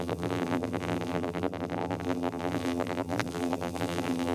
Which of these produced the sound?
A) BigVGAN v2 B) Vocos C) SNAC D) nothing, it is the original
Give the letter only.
A